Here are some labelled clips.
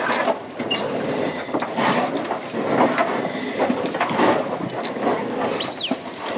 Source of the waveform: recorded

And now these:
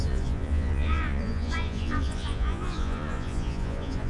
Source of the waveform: remade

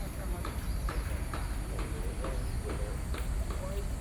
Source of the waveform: recorded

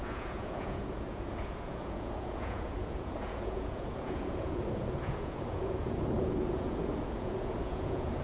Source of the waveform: remade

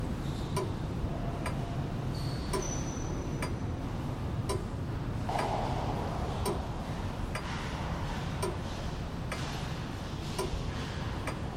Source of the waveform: recorded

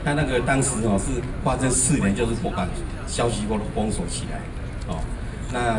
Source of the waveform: recorded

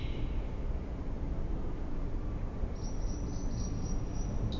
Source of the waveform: recorded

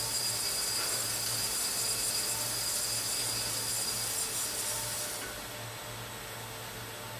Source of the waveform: recorded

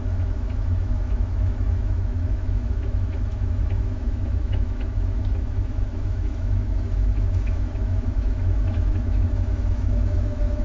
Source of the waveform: remade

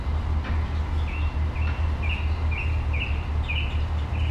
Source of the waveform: recorded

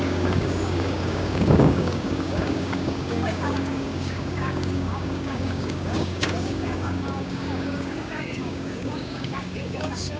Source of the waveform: remade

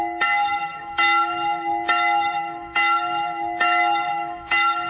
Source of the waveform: remade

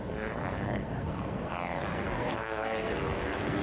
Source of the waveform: remade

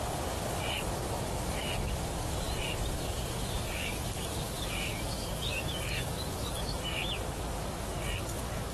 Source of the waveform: remade